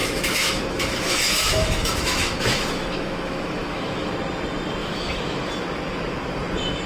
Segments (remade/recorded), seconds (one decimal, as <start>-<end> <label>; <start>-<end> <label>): 0.0-4.1 remade; 4.1-4.8 recorded; 4.8-5.5 remade; 5.5-6.9 recorded